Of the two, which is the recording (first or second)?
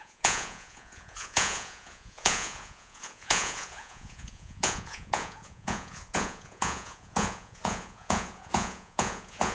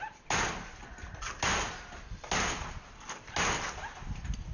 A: second